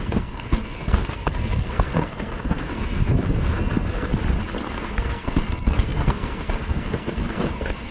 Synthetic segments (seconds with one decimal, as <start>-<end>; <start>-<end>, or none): 0.0-4.1; 4.7-7.9